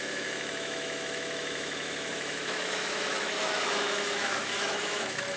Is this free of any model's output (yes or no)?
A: no